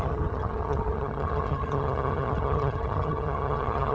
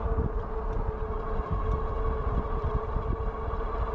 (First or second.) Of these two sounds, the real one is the second